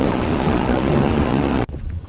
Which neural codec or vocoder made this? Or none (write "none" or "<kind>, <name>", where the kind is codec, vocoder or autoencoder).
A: vocoder, Vocos